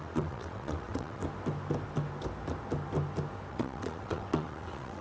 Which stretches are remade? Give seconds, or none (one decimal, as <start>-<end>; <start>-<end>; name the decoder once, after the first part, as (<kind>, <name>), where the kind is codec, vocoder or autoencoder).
0.0-1.2 (vocoder, WaveNeXt); 3.5-5.0

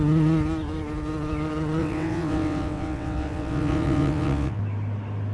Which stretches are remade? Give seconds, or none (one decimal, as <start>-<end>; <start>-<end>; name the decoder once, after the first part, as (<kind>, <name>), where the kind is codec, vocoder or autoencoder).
1.8-4.6 (vocoder, WaveNeXt)

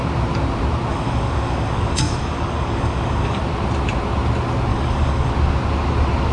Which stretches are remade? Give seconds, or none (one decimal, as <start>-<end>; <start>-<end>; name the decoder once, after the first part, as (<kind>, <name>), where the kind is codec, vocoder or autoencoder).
0.9-3.4 (codec, DAC); 4.7-5.3

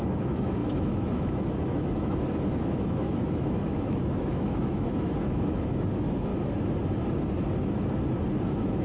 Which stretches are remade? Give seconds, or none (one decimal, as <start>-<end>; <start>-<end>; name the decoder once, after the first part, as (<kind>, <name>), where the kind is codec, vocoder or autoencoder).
0.0-6.3 (autoencoder, DAC-VAE)

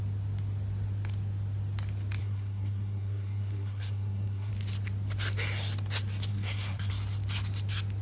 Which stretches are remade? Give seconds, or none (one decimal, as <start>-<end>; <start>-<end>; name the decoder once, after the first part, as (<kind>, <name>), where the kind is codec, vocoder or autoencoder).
2.2-4.5 (codec, SNAC); 6.3-6.9

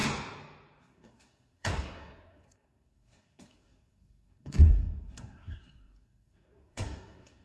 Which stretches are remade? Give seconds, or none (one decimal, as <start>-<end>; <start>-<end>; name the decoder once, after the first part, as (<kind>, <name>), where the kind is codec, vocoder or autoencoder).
0.8-7.4 (codec, SNAC)

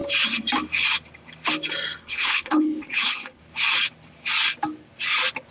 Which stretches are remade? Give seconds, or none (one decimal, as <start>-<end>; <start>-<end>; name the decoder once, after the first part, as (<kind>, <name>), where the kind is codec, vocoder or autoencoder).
2.0-3.4 (codec, HILCodec)